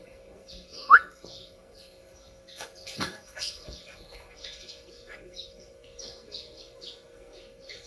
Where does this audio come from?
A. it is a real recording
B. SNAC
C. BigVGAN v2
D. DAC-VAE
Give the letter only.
B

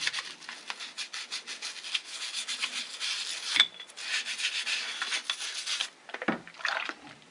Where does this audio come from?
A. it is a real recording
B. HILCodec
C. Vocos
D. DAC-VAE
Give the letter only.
A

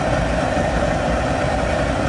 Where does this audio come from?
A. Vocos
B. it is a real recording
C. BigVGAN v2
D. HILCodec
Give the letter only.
C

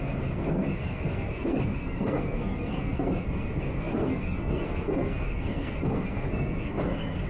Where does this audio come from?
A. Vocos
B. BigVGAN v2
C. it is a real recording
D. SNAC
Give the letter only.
D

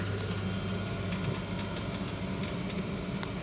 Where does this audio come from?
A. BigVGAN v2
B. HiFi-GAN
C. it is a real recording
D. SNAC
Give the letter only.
C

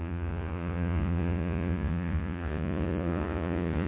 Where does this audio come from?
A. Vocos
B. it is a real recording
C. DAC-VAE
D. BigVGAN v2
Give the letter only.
A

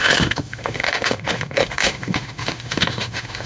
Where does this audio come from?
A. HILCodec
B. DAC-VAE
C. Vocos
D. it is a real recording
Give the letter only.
B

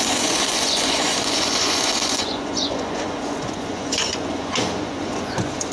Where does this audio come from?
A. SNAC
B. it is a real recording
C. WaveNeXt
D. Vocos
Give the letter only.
D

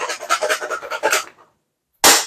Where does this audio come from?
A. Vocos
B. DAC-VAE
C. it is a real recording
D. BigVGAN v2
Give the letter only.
C